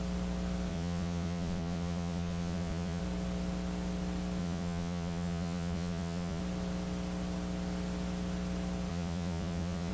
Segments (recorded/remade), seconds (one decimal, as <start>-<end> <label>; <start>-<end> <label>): 0.0-0.7 recorded; 0.7-3.0 remade; 3.0-4.4 recorded; 4.4-6.4 remade; 6.4-8.9 recorded; 8.9-9.9 remade